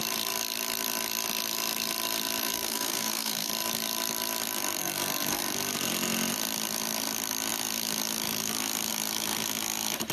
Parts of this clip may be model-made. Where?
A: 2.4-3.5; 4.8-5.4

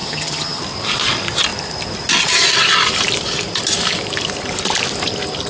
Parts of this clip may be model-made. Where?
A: 0.0-0.6

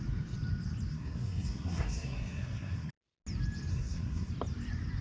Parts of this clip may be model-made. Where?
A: 0.9-2.9; 3.7-4.3

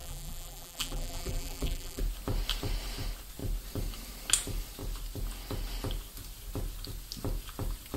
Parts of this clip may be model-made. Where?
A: 0.0-2.0

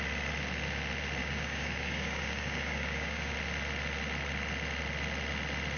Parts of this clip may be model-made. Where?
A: 1.2-3.3

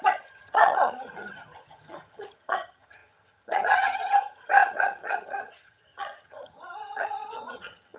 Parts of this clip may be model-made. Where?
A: 0.0-8.0